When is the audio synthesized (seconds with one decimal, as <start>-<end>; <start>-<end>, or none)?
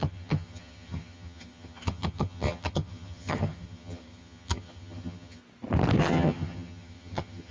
0.0-5.4; 6.0-7.5